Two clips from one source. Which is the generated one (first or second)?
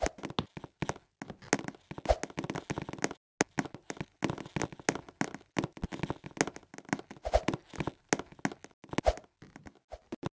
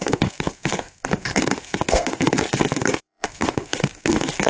second